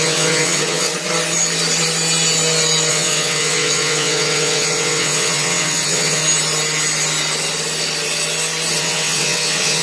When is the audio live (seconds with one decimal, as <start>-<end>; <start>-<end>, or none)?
0.9-2.9; 6.2-8.8